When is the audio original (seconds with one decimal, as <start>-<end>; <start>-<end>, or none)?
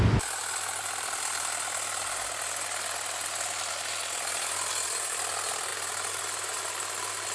0.0-7.3